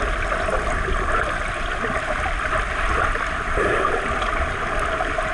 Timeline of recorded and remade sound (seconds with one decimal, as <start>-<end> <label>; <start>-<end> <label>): 0.0-5.3 recorded